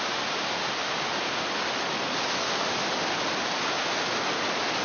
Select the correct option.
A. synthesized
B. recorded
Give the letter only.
B